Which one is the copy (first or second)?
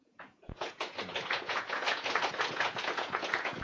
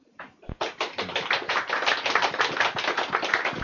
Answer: first